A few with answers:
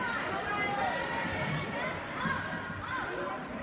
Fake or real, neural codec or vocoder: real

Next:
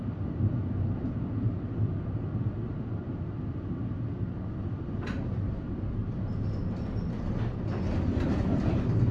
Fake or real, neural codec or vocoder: real